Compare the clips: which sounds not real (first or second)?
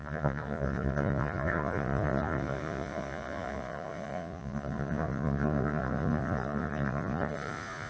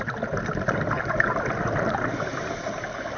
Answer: first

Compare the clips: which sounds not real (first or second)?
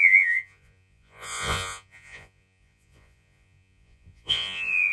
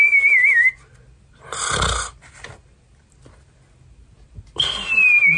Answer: first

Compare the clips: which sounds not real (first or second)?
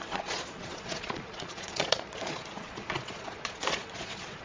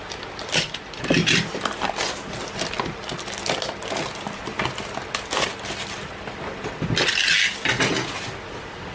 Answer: first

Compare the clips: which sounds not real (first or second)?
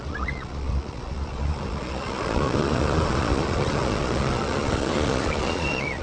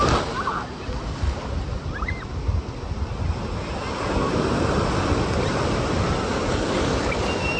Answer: first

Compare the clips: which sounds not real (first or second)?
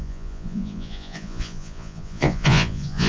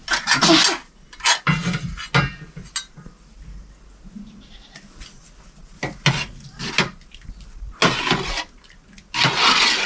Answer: first